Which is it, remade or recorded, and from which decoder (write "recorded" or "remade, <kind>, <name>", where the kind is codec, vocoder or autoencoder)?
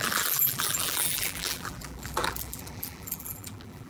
remade, vocoder, BigVGAN v2